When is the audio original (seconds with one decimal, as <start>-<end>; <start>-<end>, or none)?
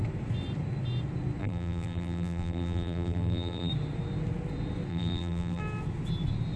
0.0-1.4; 3.7-4.9; 5.6-6.6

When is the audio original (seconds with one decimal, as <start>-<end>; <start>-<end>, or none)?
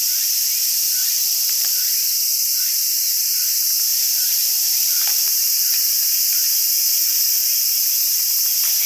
0.0-1.0; 1.7-3.9; 5.7-8.9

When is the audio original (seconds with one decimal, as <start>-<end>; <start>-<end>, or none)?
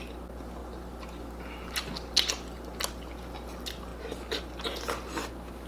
0.0-5.7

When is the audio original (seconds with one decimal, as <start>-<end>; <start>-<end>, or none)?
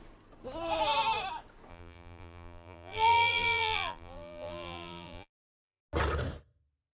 0.0-1.7; 5.8-7.0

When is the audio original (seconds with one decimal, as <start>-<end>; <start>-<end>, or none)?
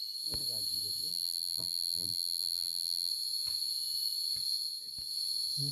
0.0-1.1; 3.1-5.7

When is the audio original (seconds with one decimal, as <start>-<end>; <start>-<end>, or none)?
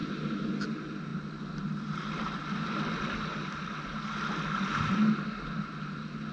0.0-6.3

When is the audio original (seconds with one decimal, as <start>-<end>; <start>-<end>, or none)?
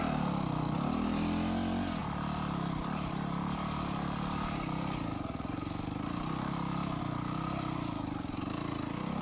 0.0-9.2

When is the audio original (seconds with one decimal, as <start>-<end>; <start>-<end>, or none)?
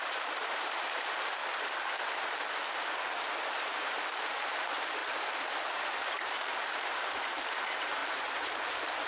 1.4-3.5; 5.0-5.8